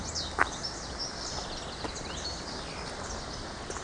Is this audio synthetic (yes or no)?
no